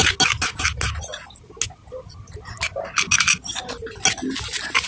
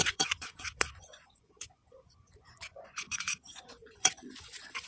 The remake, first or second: second